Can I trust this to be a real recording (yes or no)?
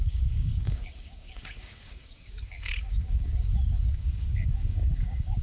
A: no